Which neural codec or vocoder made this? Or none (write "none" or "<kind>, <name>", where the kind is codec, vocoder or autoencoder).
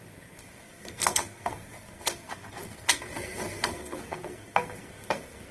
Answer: codec, SNAC